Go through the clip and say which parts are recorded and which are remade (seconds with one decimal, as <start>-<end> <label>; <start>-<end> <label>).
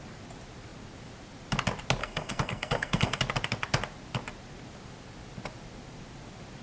0.0-2.0 recorded; 2.0-3.2 remade; 3.2-6.6 recorded